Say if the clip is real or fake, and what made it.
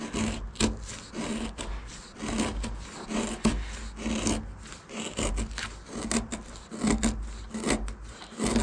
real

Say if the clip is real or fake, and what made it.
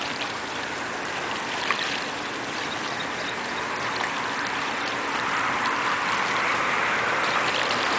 real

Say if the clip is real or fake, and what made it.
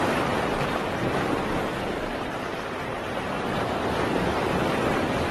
fake, vocoder, BigVGAN v2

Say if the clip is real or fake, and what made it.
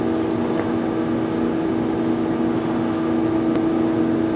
real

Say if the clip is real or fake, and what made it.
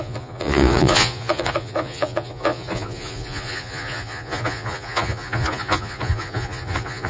fake, vocoder, Vocos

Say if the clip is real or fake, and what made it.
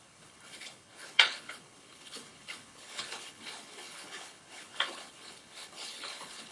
fake, codec, HILCodec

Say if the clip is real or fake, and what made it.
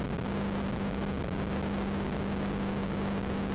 real